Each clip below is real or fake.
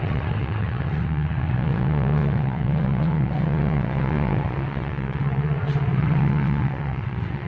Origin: fake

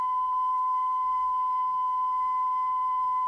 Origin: fake